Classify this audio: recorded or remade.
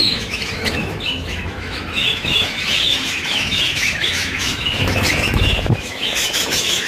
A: remade